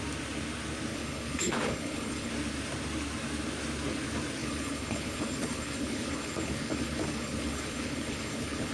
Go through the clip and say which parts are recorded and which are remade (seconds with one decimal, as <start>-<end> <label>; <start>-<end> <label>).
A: 0.0-0.9 recorded; 0.9-2.3 remade; 2.3-4.4 recorded; 4.4-8.7 remade